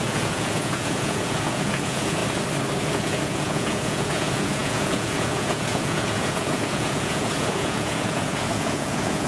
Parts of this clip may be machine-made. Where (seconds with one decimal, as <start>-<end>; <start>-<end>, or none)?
0.0-2.2; 2.8-9.3

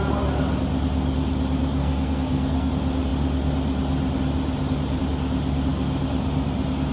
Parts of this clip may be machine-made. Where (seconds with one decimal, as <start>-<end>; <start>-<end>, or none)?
1.8-2.7